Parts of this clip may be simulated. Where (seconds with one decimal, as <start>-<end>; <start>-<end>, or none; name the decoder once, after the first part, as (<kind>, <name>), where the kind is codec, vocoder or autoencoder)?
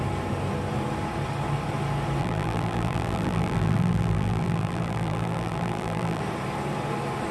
2.2-6.2 (vocoder, BigVGAN v2)